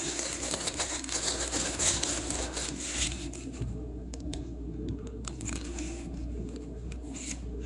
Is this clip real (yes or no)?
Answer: no